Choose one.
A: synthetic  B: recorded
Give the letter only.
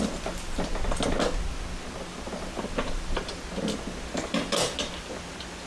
B